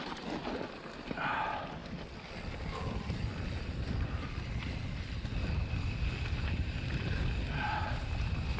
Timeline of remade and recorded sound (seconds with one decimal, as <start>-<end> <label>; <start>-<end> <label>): 0.0-8.6 remade